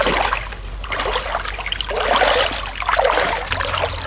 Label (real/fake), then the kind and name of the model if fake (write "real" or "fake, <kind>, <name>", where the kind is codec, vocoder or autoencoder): real